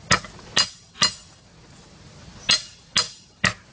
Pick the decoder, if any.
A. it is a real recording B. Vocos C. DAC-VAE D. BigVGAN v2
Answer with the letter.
A